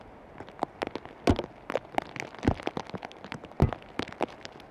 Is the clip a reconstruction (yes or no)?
no